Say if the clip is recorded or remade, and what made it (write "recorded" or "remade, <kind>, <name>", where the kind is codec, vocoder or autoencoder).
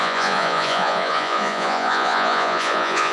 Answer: remade, vocoder, Vocos